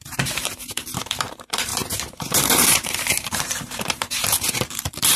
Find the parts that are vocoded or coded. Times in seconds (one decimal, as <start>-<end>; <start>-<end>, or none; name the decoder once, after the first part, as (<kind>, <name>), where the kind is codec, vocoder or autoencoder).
0.0-5.2 (vocoder, BigVGAN v2)